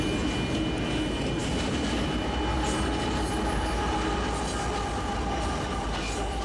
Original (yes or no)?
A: yes